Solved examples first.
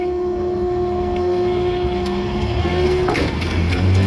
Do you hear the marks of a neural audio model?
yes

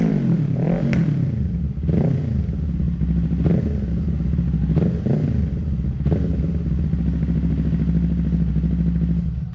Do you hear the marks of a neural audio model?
no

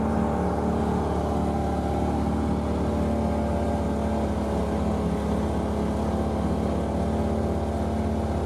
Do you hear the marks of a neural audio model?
no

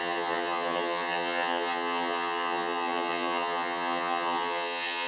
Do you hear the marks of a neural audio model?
yes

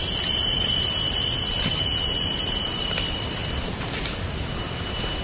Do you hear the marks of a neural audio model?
no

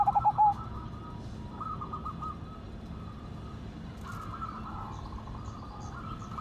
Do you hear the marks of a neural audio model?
no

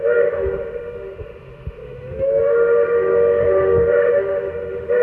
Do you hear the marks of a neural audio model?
yes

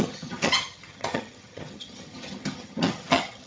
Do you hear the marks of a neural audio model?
yes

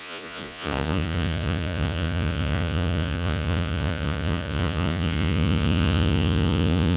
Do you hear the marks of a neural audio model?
yes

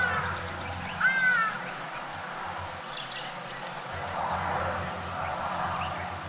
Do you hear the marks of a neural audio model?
no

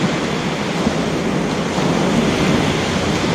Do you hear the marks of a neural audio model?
no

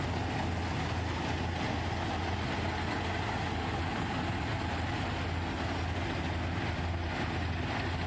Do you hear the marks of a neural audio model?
no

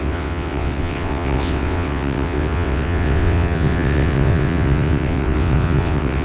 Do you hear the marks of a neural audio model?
yes